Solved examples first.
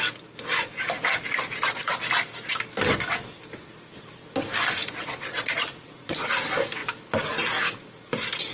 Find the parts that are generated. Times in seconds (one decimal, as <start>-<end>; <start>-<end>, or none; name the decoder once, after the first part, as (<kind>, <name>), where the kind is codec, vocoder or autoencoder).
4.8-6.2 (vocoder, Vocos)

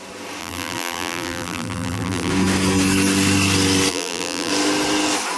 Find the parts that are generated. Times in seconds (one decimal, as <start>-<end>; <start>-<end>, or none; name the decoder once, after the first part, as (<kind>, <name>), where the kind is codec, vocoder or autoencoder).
0.4-2.3 (vocoder, BigVGAN v2); 3.9-4.5

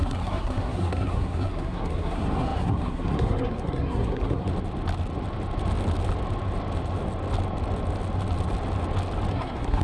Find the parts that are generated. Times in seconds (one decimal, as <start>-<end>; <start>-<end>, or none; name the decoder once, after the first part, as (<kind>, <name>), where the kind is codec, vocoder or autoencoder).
0.0-4.5 (codec, SNAC); 9.3-9.8